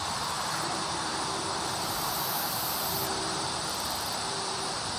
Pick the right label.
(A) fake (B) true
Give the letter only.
A